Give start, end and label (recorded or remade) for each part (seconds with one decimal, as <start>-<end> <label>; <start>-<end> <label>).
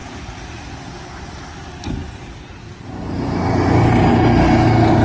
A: 0.0-5.0 recorded